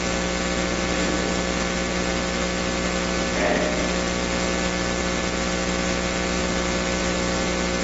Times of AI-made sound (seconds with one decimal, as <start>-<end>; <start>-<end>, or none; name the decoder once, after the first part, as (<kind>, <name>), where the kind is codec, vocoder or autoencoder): none